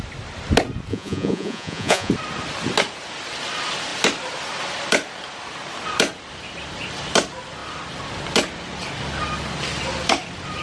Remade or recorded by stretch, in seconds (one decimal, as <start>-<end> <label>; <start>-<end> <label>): 0.0-0.9 recorded; 0.9-2.1 remade; 2.1-10.6 recorded